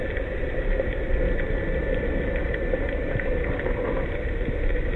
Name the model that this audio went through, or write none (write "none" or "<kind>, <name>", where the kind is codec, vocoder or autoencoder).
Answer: none